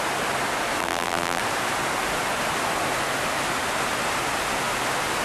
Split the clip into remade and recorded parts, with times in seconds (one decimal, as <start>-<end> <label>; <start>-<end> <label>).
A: 0.0-0.8 recorded; 0.8-1.4 remade; 1.4-5.2 recorded